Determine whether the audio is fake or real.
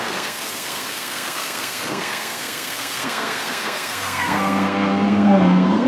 fake